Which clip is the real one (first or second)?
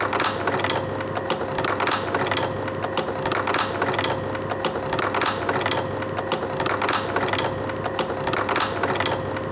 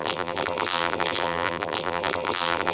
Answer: first